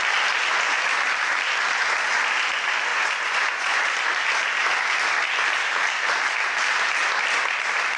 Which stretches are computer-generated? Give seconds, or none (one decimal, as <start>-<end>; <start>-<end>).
2.9-3.8